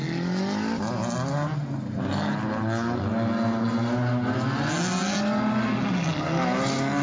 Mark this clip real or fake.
real